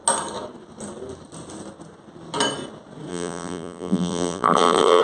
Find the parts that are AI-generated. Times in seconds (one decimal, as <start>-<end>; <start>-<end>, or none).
3.1-5.0